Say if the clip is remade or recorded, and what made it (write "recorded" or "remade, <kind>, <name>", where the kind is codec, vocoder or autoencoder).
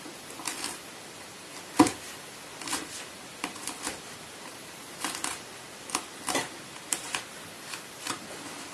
remade, vocoder, BigVGAN v2